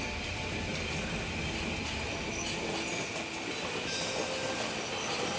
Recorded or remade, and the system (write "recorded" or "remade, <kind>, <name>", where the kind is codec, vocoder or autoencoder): recorded